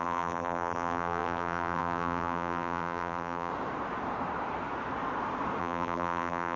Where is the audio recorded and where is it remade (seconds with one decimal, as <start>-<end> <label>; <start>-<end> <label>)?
0.0-3.5 remade; 3.5-5.6 recorded; 5.6-6.6 remade